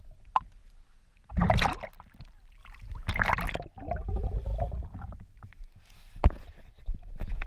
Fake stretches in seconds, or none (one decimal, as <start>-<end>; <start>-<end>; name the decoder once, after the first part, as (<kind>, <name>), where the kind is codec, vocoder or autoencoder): 1.3-2.2 (vocoder, BigVGAN v2)